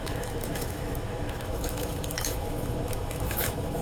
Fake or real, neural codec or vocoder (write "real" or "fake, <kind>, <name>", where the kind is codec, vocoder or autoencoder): fake, autoencoder, DAC-VAE